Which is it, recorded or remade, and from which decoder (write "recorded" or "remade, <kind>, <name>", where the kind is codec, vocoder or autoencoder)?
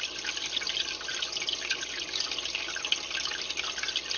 recorded